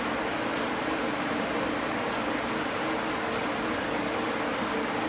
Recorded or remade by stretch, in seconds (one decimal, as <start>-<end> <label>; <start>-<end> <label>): 0.0-0.5 recorded; 0.5-1.5 remade; 1.5-5.1 recorded